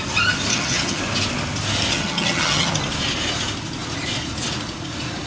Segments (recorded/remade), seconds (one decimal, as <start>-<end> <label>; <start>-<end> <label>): 0.0-0.5 recorded; 0.5-1.0 remade; 1.0-1.9 recorded; 1.9-2.7 remade; 2.7-5.3 recorded